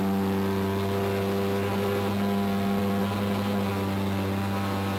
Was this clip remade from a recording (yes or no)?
no